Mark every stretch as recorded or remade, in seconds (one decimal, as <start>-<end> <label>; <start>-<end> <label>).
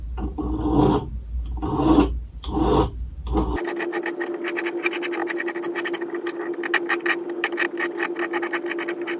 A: 0.0-9.2 recorded